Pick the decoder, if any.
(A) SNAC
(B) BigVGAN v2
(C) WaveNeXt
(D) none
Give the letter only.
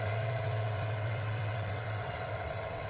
C